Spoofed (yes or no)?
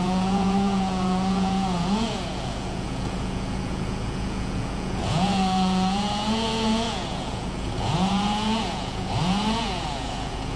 yes